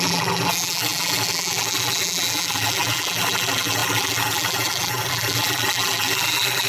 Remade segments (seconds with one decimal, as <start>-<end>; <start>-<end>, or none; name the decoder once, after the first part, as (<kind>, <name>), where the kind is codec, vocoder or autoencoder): 0.0-6.7 (vocoder, BigVGAN v2)